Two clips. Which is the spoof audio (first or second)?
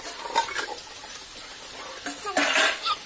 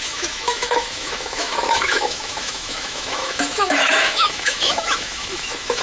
second